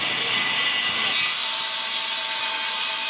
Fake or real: real